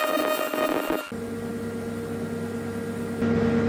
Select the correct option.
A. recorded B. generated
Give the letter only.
A